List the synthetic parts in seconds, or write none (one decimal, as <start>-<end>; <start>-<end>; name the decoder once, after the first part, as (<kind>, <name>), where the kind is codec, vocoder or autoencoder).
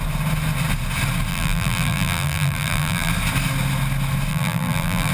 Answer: 1.3-3.1 (vocoder, BigVGAN v2); 4.3-5.1